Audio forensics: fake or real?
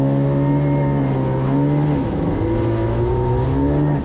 real